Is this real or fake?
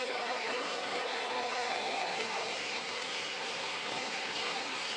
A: fake